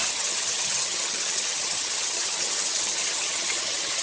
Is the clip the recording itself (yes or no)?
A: no